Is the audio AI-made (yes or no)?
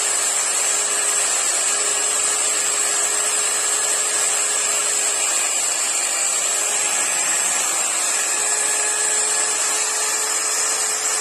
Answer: no